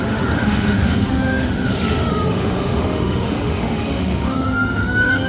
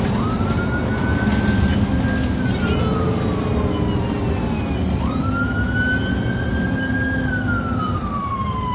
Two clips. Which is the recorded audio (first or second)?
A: second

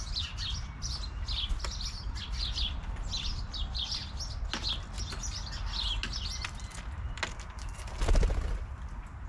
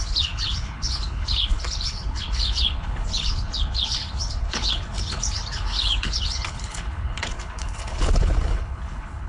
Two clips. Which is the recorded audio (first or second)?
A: first